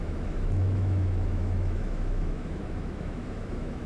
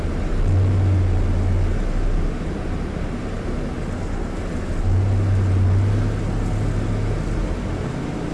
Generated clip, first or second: first